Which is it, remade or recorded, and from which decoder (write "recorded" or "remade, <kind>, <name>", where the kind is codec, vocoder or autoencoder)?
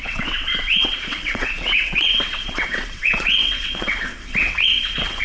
remade, vocoder, WaveNeXt